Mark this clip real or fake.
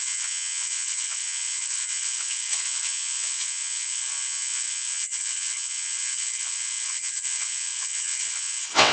fake